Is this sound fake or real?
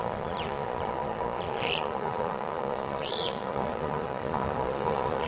fake